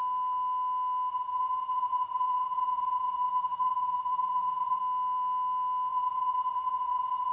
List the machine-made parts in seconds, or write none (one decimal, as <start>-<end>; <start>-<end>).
1.1-4.8; 5.9-7.3